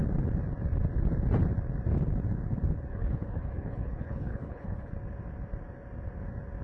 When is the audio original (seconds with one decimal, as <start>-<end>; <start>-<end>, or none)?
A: 0.0-2.9; 4.9-6.6